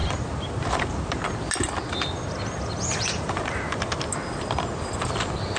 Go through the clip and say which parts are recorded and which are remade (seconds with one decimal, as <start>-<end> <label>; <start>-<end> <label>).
0.0-5.6 remade